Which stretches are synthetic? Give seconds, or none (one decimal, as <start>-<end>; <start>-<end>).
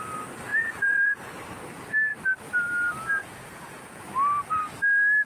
0.5-1.3; 3.2-4.0